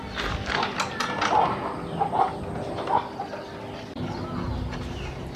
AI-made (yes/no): no